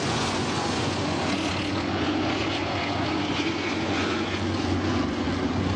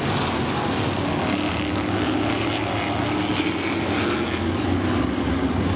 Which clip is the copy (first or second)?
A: first